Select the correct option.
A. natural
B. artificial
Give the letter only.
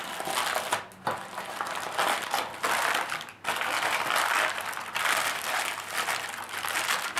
A